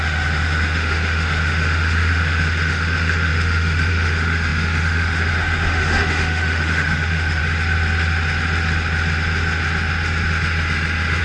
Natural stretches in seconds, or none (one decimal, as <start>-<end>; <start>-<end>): 7.4-11.2